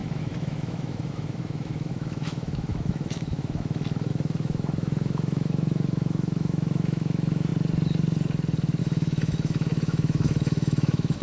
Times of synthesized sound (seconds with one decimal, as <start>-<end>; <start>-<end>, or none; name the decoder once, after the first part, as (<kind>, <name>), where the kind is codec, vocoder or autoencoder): 0.0-7.5 (autoencoder, DAC-VAE); 8.8-11.2